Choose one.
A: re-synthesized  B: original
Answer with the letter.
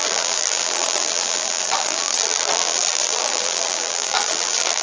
A